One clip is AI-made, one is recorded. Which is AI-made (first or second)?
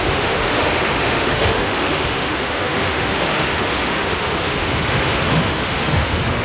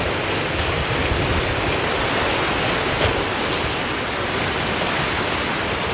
first